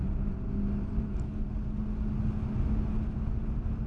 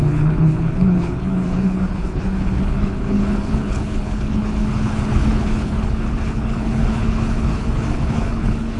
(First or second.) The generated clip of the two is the second